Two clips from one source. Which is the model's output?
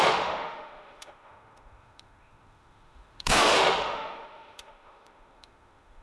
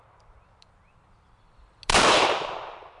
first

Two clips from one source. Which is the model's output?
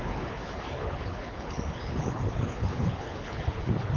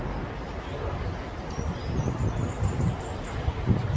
first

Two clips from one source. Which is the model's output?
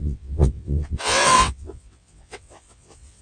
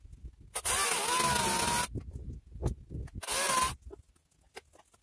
first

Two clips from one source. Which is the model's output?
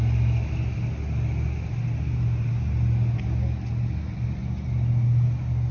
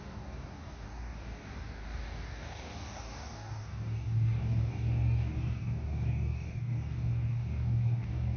second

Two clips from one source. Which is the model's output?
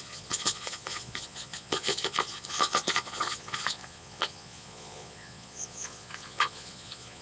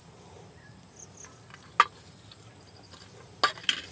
first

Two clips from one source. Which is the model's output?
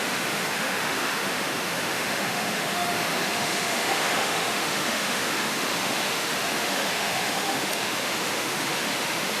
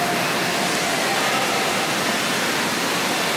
first